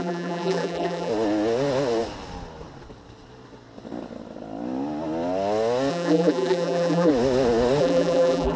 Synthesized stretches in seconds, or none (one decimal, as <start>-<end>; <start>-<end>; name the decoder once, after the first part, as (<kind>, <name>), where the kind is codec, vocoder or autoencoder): 0.0-1.1 (vocoder, BigVGAN v2); 5.9-7.1; 7.8-8.6